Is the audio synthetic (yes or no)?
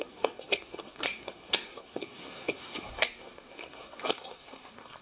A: yes